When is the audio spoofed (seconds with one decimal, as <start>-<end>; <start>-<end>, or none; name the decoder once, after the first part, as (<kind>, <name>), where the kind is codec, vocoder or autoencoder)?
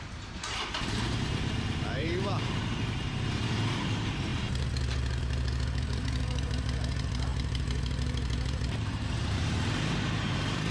0.0-10.7 (vocoder, BigVGAN v2)